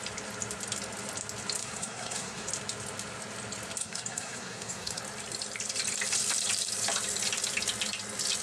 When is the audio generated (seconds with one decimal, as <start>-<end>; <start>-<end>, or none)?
1.6-2.5; 3.8-5.0